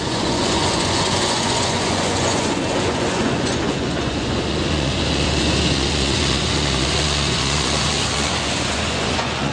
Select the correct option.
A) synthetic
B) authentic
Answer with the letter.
A